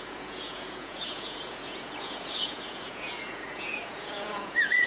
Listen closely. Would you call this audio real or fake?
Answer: fake